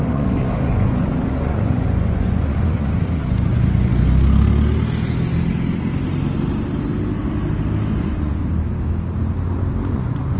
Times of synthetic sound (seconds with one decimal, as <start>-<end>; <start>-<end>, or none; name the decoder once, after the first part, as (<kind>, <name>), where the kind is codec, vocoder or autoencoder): 0.0-3.9 (vocoder, Vocos); 8.0-8.4; 9.9-10.4